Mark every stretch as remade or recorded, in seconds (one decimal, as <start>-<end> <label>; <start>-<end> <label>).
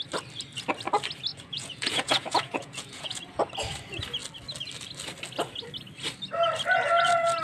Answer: 0.0-1.3 recorded; 1.3-3.2 remade; 3.2-7.4 recorded